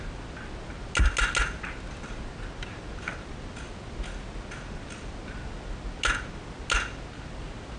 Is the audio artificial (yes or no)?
no